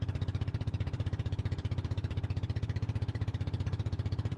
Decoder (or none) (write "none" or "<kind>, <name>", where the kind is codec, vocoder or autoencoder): vocoder, BigVGAN v2